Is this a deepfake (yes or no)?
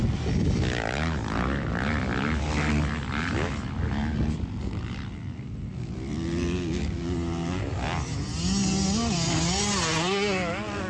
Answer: no